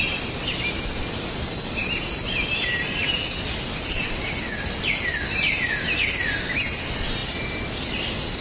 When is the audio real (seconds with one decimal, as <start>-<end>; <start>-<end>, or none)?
0.0-8.4